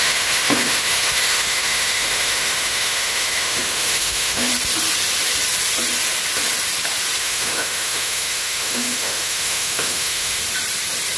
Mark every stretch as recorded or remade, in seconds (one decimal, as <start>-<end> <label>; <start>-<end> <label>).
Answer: 0.0-4.5 remade; 4.5-7.2 recorded; 7.2-10.4 remade; 10.4-11.2 recorded